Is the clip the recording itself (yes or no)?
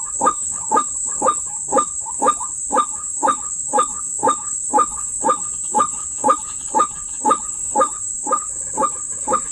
no